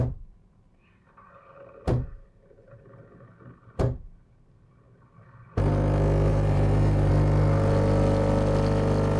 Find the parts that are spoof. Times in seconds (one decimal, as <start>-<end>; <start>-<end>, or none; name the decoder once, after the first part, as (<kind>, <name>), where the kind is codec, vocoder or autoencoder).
6.3-7.1 (vocoder, BigVGAN v2)

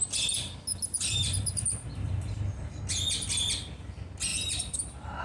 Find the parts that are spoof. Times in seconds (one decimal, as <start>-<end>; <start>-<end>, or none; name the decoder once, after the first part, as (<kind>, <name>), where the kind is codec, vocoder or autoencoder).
0.7-2.8 (vocoder, BigVGAN v2); 4.3-5.2